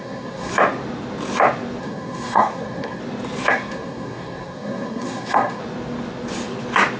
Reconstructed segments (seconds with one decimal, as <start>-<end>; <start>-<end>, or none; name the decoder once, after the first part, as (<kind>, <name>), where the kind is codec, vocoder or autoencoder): 0.0-0.5 (codec, SNAC); 1.8-3.0; 3.5-5.6